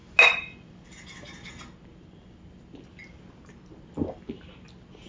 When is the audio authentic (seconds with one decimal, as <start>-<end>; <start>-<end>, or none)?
0.0-5.1